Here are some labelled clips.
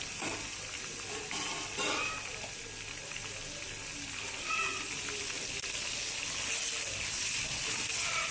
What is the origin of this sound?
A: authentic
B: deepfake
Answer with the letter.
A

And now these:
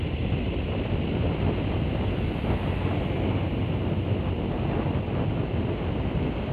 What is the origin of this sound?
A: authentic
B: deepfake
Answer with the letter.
A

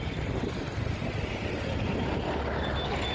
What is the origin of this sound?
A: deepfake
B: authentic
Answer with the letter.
B